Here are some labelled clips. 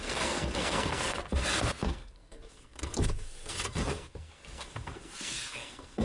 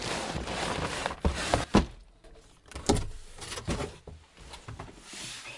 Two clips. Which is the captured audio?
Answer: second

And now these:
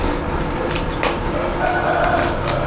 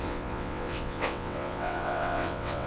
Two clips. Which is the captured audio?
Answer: first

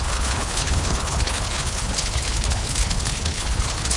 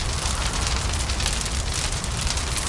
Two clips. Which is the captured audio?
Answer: second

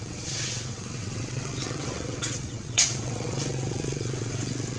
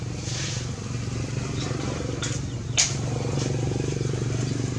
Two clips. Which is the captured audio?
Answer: second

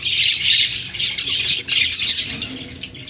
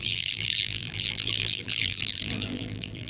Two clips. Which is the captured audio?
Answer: first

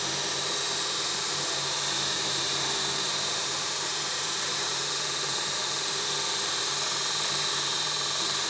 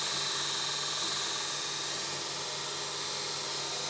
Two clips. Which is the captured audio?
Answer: second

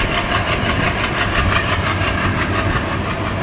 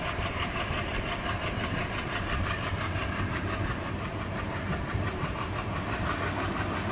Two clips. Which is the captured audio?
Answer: first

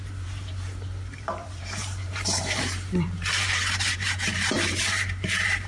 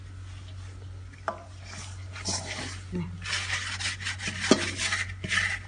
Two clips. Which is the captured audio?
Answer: second